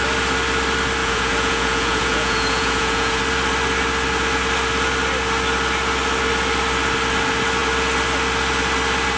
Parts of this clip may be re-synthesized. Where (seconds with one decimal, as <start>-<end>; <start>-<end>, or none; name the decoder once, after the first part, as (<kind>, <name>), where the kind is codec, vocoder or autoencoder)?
1.0-3.2 (vocoder, Vocos)